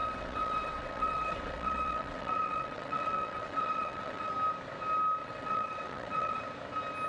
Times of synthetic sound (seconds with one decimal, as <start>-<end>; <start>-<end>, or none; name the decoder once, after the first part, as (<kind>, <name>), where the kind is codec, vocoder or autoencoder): 0.0-4.3 (vocoder, WaveNeXt); 5.2-6.4

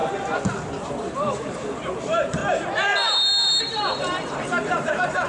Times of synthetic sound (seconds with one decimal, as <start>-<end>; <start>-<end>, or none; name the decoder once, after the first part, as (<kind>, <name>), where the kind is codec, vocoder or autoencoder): 0.9-2.4 (vocoder, BigVGAN v2); 3.6-5.3

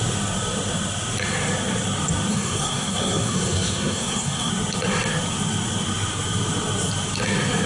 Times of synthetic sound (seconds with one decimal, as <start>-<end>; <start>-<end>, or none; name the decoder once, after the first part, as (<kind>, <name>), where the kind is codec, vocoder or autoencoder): 2.3-4.5 (codec, SNAC)

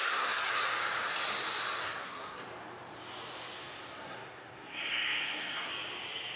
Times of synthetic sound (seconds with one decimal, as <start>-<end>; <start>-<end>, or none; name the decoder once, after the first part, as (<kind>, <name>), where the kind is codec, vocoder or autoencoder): 0.0-0.5 (codec, SNAC); 1.8-2.4; 3.6-5.7

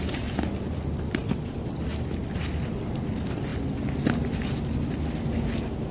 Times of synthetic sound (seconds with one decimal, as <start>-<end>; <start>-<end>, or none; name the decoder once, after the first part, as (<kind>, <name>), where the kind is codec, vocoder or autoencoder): none

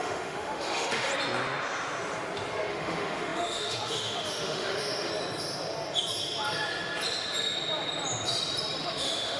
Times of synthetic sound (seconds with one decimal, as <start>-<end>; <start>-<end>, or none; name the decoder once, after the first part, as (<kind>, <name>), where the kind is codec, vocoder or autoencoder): 0.0-1.1 (autoencoder, DAC-VAE); 2.7-5.1; 8.8-9.4